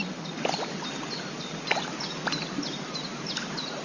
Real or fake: real